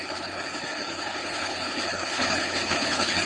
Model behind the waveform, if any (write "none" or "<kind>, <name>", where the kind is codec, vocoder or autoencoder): codec, HILCodec